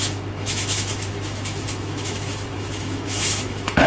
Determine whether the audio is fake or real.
fake